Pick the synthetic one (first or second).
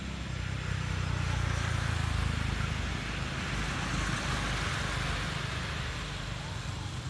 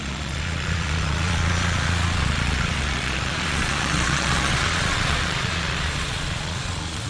second